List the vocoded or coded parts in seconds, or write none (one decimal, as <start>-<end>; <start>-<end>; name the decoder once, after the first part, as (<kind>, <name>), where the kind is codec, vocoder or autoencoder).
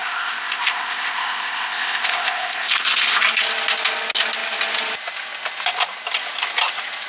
0.0-3.2 (codec, ZipCodec)